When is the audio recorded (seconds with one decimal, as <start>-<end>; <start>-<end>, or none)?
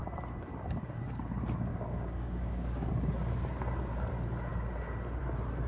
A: 0.0-1.7; 2.9-5.7